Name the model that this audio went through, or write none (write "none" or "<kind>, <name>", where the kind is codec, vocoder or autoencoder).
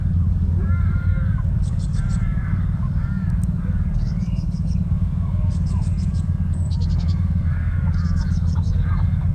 codec, DAC